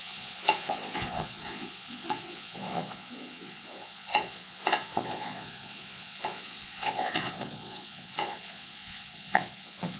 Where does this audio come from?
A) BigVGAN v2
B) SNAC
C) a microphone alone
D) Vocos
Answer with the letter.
D